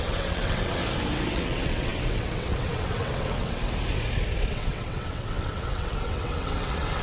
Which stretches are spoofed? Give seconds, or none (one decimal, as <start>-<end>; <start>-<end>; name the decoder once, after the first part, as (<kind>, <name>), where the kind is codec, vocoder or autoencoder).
0.0-0.8 (vocoder, WaveNeXt); 1.3-3.6; 4.5-7.0